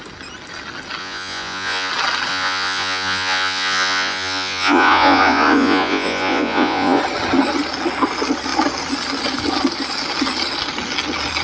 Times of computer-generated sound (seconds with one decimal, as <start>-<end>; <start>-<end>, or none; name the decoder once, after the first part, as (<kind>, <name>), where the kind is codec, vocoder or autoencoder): 1.0-1.9 (vocoder, Vocos); 2.3-7.0